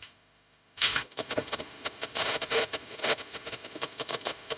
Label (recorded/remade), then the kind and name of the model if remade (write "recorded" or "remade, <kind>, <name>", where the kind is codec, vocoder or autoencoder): remade, autoencoder, DAC-VAE